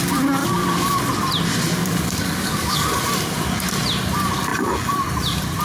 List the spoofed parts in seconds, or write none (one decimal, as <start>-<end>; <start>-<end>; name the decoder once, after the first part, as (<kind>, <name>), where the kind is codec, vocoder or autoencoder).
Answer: 0.4-1.0 (codec, DAC); 1.8-2.9